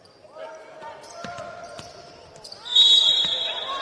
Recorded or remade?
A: recorded